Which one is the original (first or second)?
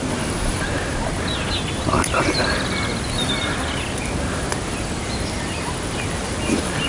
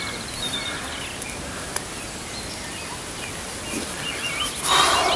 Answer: second